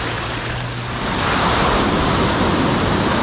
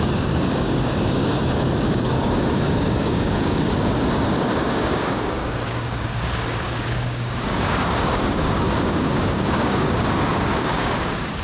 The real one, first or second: first